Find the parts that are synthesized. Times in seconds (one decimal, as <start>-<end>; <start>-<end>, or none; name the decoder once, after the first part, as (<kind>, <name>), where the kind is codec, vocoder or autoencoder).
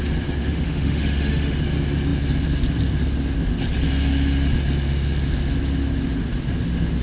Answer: 0.4-1.6 (autoencoder, DAC-VAE)